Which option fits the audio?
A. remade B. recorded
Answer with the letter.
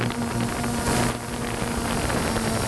B